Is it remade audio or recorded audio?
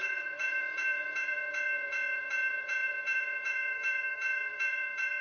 remade